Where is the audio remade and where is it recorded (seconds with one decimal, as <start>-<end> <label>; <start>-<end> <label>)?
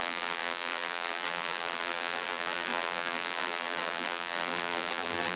0.0-5.4 remade